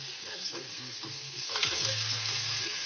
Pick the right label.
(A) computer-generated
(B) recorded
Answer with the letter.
A